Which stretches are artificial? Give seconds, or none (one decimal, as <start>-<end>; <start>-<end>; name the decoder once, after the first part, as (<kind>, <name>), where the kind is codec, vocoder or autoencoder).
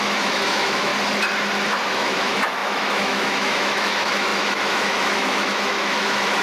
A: 0.0-0.9 (autoencoder, DAC-VAE); 1.9-6.4